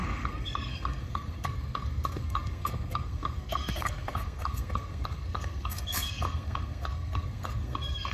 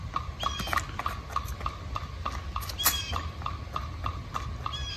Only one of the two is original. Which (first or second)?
second